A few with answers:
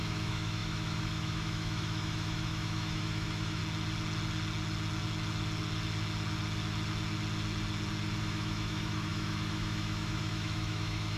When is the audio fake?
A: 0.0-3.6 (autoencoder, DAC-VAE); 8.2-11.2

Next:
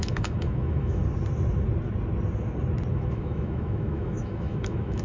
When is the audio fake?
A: 0.0-1.0 (autoencoder, DAC-VAE); 2.9-5.0

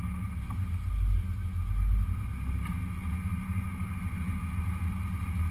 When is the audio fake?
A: none